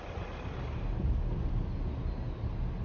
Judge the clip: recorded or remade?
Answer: recorded